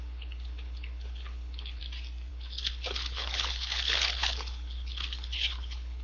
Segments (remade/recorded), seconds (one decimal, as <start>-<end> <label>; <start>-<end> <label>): 0.0-1.8 remade; 1.8-2.3 recorded; 2.3-6.0 remade